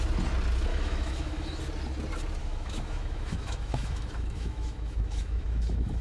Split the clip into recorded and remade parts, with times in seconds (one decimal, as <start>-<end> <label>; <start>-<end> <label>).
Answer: 0.0-0.7 recorded; 0.7-1.6 remade; 1.6-2.4 recorded; 2.4-6.0 remade